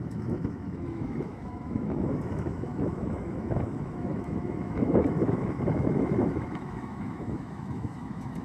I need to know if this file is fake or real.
fake